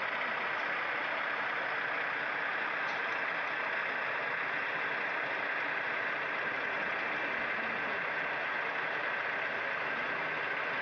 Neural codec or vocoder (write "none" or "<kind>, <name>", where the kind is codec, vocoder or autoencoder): none